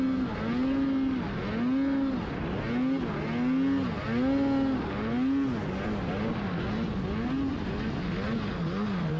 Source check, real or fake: real